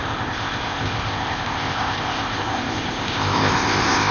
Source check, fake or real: fake